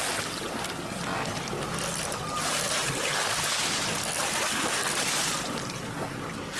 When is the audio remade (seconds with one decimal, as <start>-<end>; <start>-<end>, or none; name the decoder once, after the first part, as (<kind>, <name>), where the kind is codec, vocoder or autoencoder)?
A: none

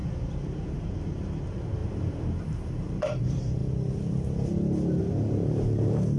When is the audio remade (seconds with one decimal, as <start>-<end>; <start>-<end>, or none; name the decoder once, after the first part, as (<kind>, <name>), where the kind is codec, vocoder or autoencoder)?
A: 0.0-3.6 (vocoder, BigVGAN v2); 5.0-6.2

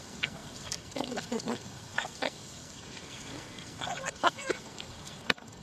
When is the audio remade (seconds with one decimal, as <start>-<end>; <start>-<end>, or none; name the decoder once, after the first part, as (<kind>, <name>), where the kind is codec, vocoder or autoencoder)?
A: 0.0-5.6 (codec, SNAC)

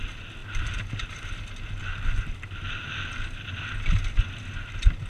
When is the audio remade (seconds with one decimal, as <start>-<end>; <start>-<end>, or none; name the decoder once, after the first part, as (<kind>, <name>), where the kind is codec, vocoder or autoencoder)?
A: 0.4-0.9 (vocoder, BigVGAN v2); 1.9-2.8